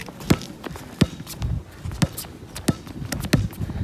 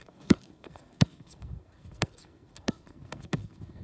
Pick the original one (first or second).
first